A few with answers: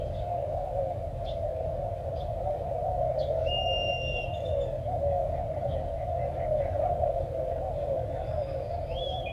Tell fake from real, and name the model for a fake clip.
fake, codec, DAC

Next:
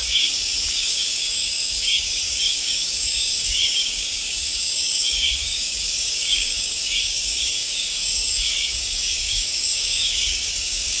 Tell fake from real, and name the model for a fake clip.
fake, codec, DAC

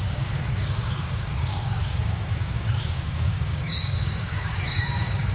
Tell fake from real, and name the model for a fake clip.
fake, codec, DAC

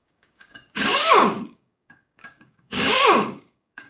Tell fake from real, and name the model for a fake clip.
fake, codec, DAC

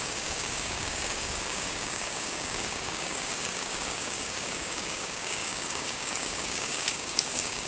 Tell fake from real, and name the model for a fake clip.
fake, codec, DAC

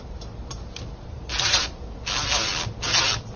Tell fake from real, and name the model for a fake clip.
real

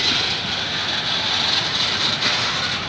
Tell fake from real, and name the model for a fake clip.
real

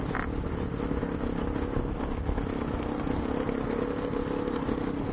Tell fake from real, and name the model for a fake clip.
real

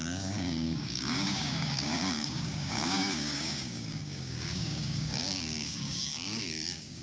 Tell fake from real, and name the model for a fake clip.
fake, codec, DAC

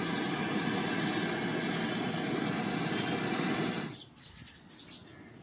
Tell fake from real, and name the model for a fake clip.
real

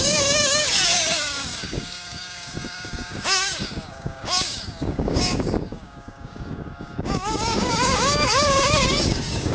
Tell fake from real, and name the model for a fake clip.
fake, codec, DAC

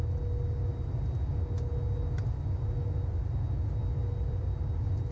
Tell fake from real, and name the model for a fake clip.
real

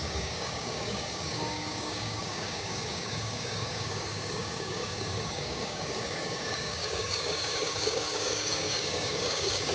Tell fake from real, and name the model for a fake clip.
fake, codec, DAC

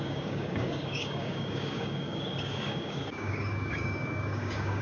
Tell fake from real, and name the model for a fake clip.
fake, codec, DAC